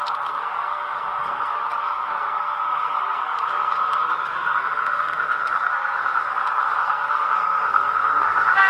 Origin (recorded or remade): remade